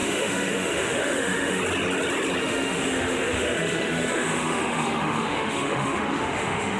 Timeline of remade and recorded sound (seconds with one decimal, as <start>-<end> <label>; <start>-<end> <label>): 0.0-1.6 remade; 1.6-2.4 recorded; 2.4-6.8 remade